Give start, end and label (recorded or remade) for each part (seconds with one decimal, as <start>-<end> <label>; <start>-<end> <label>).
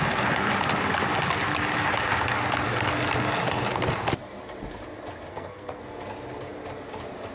0.0-5.3 recorded; 5.3-5.8 remade; 5.8-7.3 recorded